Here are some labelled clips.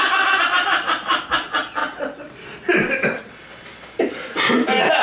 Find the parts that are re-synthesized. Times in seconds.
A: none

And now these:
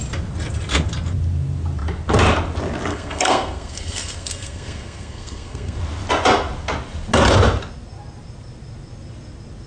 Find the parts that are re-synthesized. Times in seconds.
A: 2.9-5.8 (codec, SNAC)

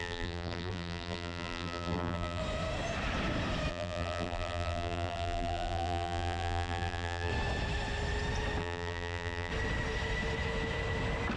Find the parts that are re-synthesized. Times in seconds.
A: 0.0-2.4 (vocoder, BigVGAN v2); 3.7-7.3; 8.6-9.5

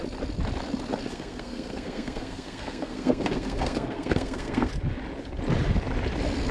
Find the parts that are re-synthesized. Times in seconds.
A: 1.1-4.7 (codec, SNAC)

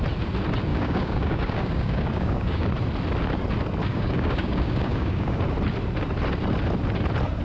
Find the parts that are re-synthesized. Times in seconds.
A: 0.7-2.7 (codec, DAC); 3.9-5.4

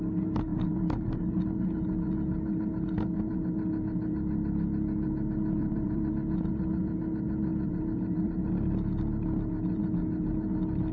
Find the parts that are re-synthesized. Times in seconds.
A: 0.5-1.4 (vocoder, BigVGAN v2); 5.6-6.1; 7.5-8.5

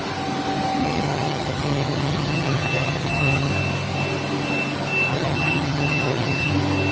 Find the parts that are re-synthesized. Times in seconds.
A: 0.8-3.5 (vocoder, HiFi-GAN); 5.1-6.5